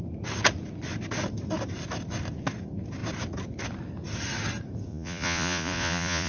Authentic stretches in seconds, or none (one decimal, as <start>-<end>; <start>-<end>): 0.0-4.9